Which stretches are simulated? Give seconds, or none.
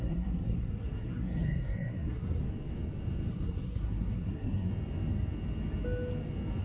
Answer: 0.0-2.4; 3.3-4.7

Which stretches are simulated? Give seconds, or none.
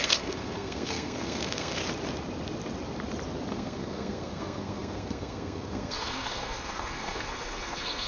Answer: 0.0-1.8; 3.5-8.1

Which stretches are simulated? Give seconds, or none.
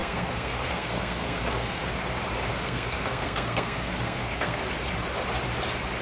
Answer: 0.0-1.8; 2.5-4.6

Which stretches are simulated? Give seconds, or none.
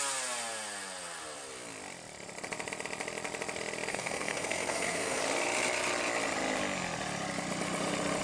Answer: 3.9-5.2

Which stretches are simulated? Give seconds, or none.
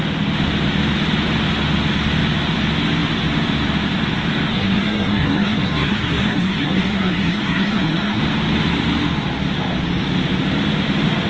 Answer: 4.5-8.2